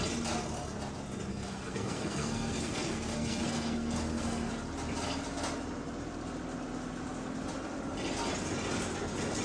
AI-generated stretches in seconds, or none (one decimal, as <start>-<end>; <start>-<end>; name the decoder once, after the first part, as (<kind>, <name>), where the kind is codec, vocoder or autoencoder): 1.3-4.5 (codec, SNAC)